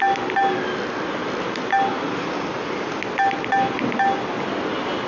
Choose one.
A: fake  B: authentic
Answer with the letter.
B